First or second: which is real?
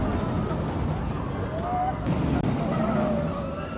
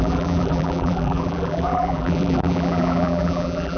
first